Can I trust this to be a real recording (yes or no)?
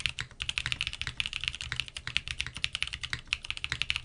yes